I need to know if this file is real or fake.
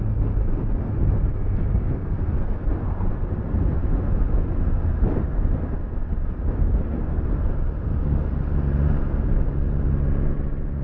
real